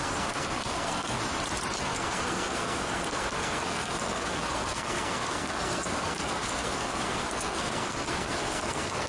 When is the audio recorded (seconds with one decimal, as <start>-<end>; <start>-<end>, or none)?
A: 1.2-1.8